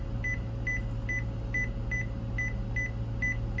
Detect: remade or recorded recorded